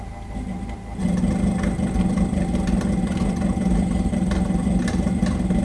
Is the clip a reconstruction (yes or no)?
no